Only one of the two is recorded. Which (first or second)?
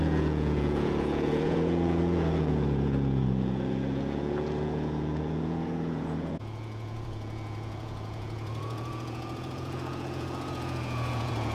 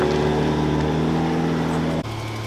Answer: second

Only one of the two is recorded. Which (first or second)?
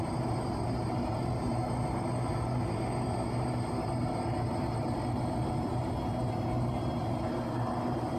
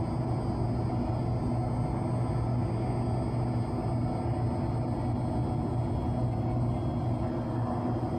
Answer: second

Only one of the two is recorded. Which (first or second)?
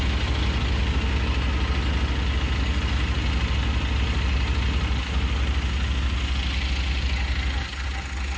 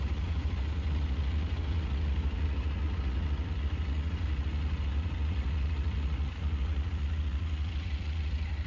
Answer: first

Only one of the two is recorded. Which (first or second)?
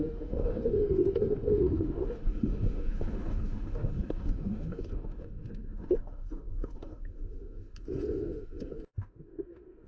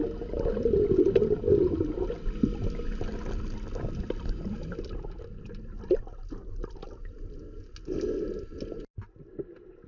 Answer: second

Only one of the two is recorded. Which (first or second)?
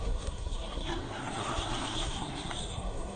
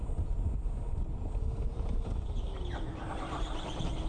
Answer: second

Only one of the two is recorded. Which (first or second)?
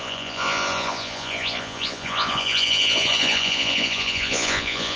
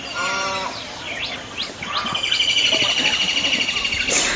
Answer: second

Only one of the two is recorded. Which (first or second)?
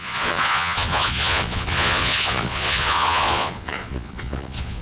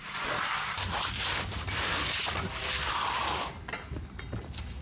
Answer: second